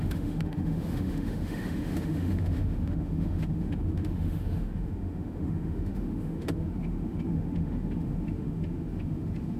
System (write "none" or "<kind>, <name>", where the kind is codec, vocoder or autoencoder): autoencoder, DAC-VAE